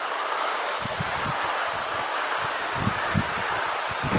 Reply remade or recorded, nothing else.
recorded